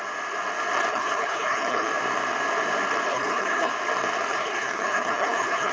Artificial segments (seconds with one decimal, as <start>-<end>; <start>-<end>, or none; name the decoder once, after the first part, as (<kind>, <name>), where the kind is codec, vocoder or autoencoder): 0.9-1.9 (codec, HILCodec); 3.1-3.7; 4.3-5.7